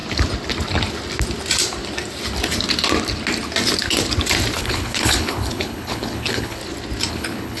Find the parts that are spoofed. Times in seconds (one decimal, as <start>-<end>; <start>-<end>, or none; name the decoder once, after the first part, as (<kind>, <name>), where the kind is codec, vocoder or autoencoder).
4.6-6.6 (codec, HILCodec); 7.1-7.6